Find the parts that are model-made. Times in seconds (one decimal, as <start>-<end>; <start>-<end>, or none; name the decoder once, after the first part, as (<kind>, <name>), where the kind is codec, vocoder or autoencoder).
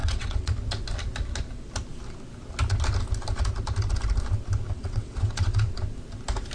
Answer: 0.0-0.5 (vocoder, WaveNeXt); 4.7-5.7